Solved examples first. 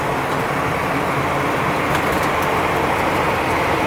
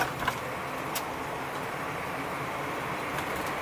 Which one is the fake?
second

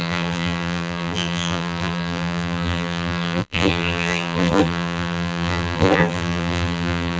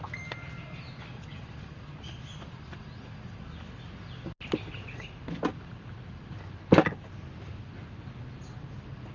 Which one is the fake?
first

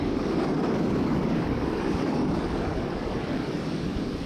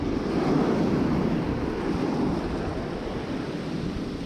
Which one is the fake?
first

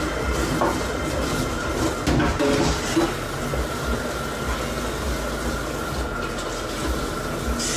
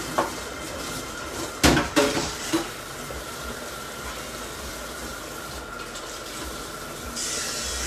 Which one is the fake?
second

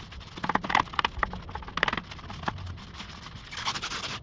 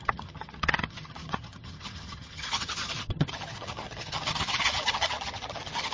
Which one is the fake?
second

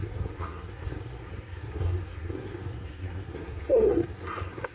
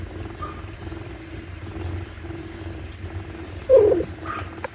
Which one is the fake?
first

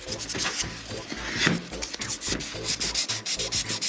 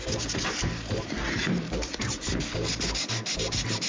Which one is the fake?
second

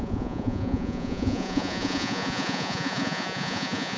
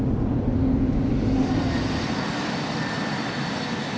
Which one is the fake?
first